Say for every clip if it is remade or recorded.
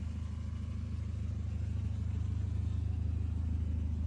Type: recorded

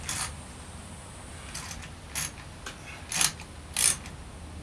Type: recorded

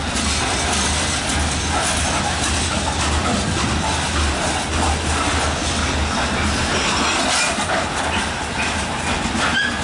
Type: recorded